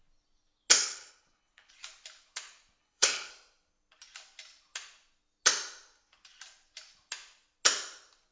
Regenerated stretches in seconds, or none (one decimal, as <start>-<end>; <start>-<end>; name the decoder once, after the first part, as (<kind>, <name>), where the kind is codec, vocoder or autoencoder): 0.8-1.7 (codec, HILCodec); 2.8-3.3